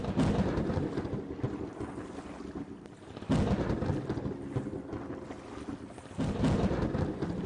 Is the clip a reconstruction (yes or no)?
no